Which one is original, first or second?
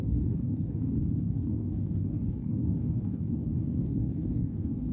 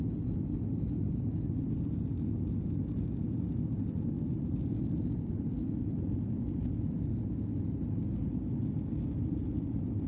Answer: second